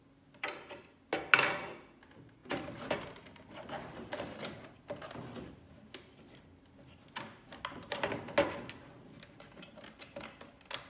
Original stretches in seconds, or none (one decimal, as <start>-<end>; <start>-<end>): 0.0-2.4; 4.7-10.9

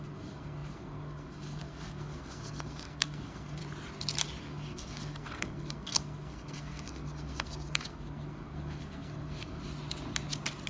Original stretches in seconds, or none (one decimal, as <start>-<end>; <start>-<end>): 3.6-4.4; 9.6-10.7

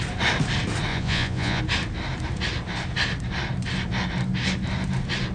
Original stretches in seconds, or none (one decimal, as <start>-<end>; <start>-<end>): 0.0-0.9; 1.6-5.3

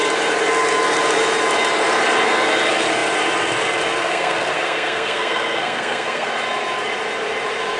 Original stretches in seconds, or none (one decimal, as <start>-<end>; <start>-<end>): 0.0-4.0; 6.3-7.8

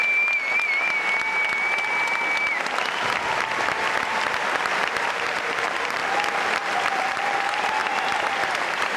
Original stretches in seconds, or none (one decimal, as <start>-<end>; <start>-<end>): 0.0-5.1; 6.0-7.1; 7.8-8.6

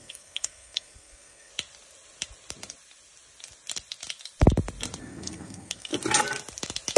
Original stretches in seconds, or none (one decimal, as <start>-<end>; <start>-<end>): 1.5-5.0; 5.9-7.0